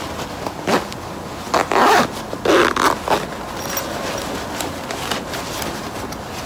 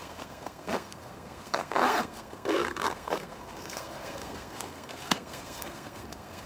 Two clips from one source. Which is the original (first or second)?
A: first